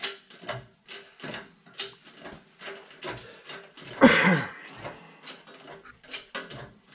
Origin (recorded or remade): recorded